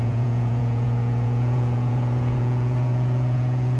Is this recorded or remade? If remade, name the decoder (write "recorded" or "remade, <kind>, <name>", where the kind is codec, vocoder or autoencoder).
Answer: remade, vocoder, Vocos